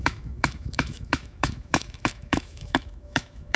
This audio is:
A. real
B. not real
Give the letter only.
B